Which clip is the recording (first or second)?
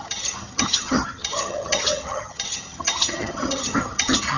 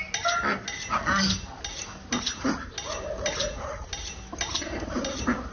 second